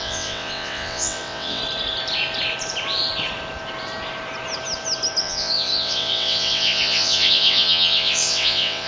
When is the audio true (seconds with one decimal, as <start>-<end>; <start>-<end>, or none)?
1.6-5.2